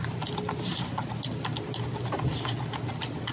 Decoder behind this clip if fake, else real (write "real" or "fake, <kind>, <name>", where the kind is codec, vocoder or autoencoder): real